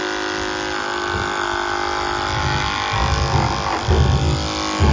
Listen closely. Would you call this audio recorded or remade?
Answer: recorded